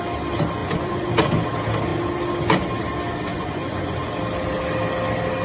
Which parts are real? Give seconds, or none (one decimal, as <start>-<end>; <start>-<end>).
0.0-0.6; 1.1-3.3; 4.1-5.4